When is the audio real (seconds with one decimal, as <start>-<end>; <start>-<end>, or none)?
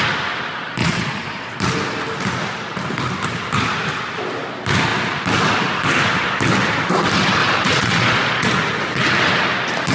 0.0-0.8; 1.6-7.4; 8.5-9.9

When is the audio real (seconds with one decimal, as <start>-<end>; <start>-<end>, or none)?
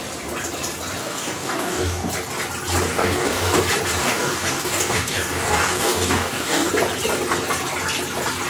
0.0-1.0; 2.1-2.9; 3.6-4.0; 6.7-8.5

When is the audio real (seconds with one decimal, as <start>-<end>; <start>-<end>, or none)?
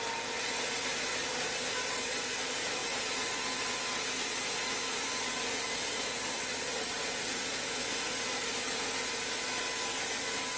0.0-10.6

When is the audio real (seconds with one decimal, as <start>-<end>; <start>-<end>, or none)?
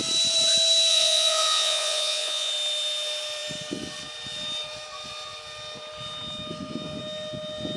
0.0-0.9; 2.5-7.8